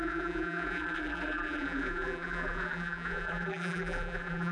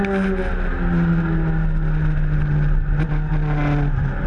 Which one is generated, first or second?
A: first